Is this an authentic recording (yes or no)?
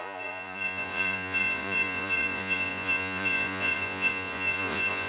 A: no